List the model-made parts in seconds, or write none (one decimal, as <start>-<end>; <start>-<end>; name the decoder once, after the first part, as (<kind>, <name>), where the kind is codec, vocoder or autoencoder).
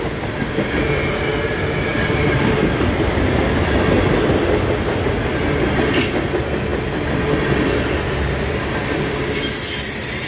none